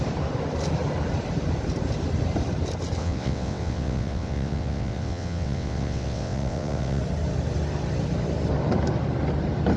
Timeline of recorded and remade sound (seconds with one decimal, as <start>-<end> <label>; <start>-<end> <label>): 0.0-3.0 recorded; 3.0-7.0 remade; 7.0-9.8 recorded